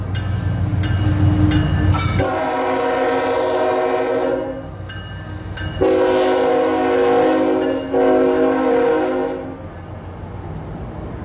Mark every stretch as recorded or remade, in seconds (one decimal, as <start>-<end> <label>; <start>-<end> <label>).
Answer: 0.0-11.2 recorded